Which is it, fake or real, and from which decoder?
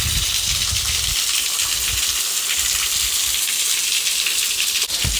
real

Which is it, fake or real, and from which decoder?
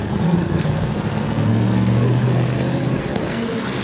fake, codec, SNAC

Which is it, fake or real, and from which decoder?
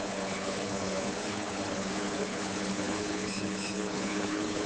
fake, codec, HILCodec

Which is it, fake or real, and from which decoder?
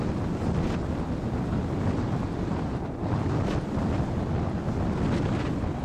real